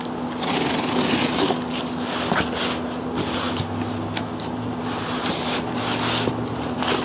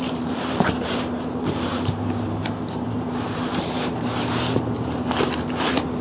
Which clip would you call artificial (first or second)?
second